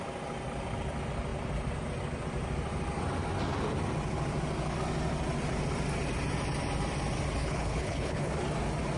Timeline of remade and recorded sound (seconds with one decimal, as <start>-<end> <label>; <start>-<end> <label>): 0.0-7.4 recorded; 7.4-8.3 remade; 8.3-9.0 recorded